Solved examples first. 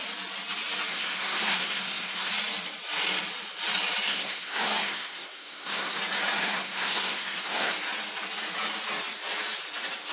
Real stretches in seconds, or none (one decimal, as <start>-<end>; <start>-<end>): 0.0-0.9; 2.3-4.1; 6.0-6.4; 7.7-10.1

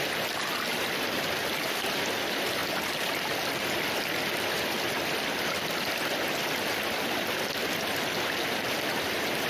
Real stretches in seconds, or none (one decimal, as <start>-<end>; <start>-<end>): 0.0-9.5

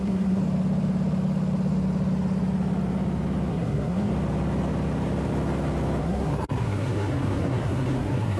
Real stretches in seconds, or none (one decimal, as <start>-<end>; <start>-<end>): 0.4-3.5; 4.1-6.0